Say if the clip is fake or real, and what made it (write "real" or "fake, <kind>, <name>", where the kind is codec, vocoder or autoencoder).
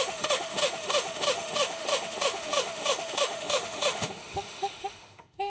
fake, autoencoder, DAC-VAE